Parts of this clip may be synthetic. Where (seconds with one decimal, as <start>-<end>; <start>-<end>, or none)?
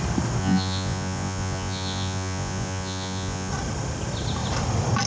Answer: 0.4-3.5